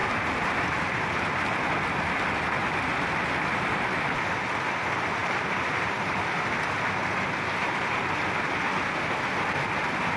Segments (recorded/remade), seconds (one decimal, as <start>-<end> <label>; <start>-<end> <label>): 0.0-1.2 remade; 1.2-5.2 recorded; 5.2-6.5 remade; 6.5-10.2 recorded